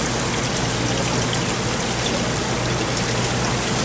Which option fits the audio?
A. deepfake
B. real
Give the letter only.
B